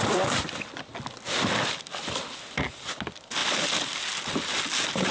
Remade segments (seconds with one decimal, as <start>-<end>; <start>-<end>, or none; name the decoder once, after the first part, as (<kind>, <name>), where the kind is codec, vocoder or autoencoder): none